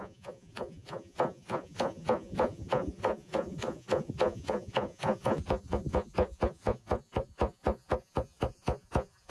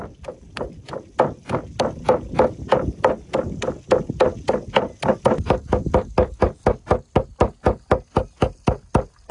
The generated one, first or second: first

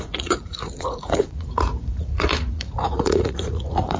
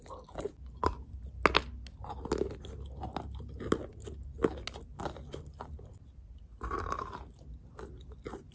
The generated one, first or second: first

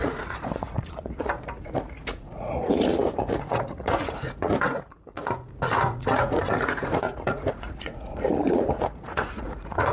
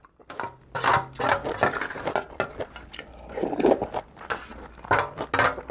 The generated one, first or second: first